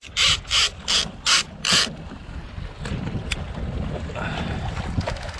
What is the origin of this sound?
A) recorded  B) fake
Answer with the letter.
A